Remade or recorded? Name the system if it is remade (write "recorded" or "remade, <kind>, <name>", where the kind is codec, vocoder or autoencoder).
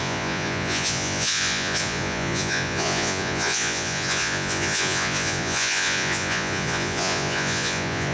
remade, vocoder, Vocos